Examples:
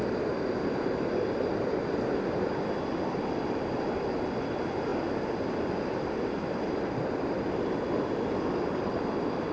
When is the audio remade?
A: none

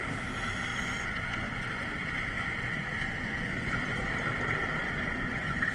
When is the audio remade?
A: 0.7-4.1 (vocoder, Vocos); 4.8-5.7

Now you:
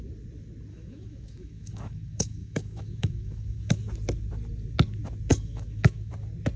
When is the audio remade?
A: 0.7-3.8 (autoencoder, DAC-VAE); 5.3-6.1